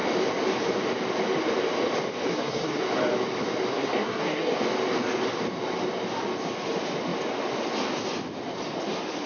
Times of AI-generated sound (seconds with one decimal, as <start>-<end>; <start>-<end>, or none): 2.3-2.8; 3.7-4.6